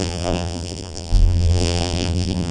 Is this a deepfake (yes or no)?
yes